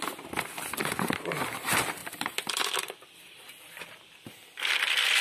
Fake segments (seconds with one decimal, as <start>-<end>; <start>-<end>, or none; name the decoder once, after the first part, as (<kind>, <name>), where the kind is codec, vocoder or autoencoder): 2.0-5.2 (vocoder, BigVGAN v2)